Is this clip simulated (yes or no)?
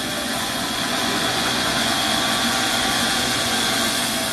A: yes